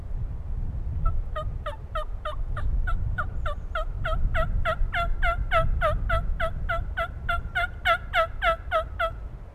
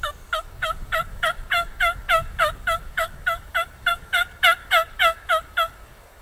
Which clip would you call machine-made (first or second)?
second